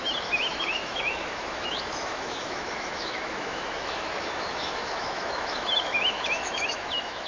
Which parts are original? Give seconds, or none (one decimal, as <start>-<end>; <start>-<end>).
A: none